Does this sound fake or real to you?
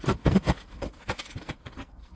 fake